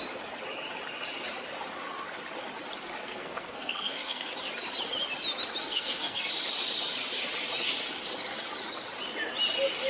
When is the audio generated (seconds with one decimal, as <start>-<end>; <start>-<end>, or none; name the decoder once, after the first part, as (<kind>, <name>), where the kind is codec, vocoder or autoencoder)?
3.0-4.3 (codec, SNAC); 5.6-6.3